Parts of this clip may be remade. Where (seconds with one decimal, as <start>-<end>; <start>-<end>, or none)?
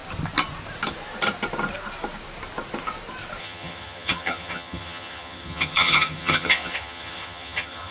3.4-7.9